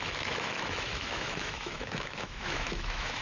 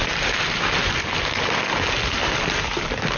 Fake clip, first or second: first